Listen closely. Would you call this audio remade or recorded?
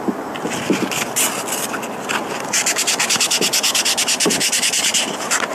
recorded